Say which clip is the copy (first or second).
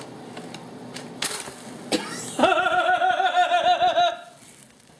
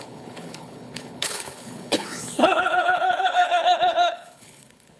second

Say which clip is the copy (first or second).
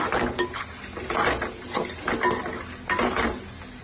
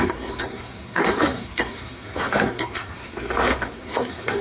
second